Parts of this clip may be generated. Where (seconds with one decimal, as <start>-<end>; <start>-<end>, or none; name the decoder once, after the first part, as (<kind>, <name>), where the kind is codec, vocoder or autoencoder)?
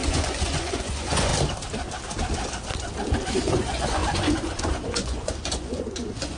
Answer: 0.0-1.3 (vocoder, Vocos); 3.4-6.4